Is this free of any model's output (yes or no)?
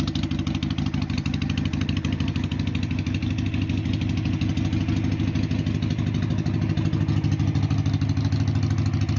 yes